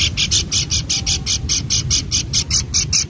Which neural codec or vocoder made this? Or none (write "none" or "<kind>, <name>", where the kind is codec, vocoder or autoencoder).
none